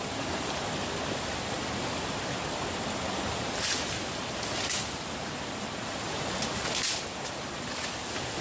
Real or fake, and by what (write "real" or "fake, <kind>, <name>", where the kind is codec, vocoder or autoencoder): real